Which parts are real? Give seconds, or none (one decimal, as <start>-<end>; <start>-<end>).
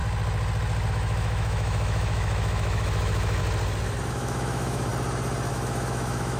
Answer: 0.0-0.9; 3.4-4.1; 4.9-5.5